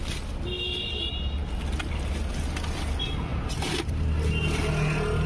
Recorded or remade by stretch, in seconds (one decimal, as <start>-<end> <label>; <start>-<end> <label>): 0.0-5.3 recorded